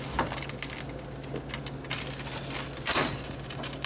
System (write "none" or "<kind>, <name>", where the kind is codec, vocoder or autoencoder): none